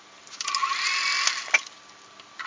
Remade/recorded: recorded